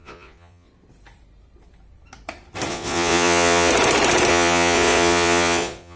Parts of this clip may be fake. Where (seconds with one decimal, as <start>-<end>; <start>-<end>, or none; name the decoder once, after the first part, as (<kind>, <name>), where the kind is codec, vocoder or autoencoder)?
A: 0.0-0.7 (vocoder, Vocos); 2.7-3.7; 4.3-6.0